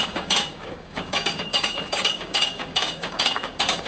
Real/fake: fake